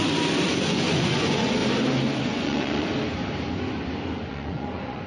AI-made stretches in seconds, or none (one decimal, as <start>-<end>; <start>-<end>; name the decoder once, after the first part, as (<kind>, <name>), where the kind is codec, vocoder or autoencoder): 0.5-1.6 (vocoder, Vocos); 2.2-2.9; 4.3-5.1